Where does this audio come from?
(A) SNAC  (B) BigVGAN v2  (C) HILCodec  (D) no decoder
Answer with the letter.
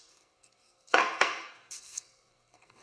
A